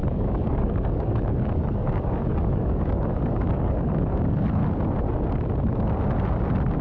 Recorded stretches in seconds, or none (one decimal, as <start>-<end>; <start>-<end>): 4.6-6.8